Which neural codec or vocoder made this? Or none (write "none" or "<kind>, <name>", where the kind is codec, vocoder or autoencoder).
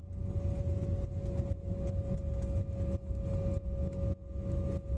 none